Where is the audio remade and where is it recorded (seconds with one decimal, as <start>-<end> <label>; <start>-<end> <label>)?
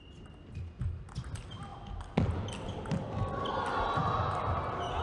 0.0-5.0 recorded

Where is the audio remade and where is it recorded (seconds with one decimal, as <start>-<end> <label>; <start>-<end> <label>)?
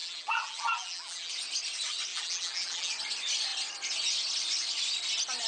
0.0-1.3 remade; 1.3-2.1 recorded; 2.1-2.9 remade; 2.9-5.5 recorded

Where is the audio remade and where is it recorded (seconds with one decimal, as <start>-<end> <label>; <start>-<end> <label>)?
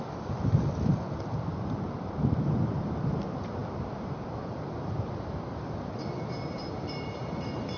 0.0-3.6 remade; 3.6-4.2 recorded; 4.2-7.8 remade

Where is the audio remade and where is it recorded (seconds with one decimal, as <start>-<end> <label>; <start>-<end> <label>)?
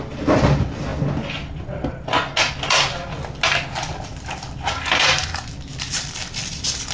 0.0-0.9 remade; 0.9-4.0 recorded; 4.0-6.9 remade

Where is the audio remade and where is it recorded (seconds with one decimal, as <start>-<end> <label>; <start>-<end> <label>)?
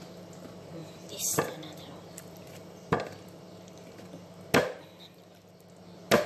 0.0-0.8 recorded; 0.8-4.1 remade; 4.1-6.3 recorded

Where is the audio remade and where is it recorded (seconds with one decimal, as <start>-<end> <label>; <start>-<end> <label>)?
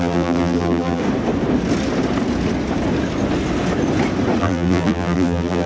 0.0-1.0 remade; 1.0-4.4 recorded; 4.4-5.7 remade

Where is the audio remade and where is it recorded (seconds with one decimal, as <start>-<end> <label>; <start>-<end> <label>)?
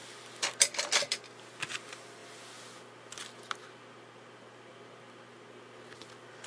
0.0-6.5 recorded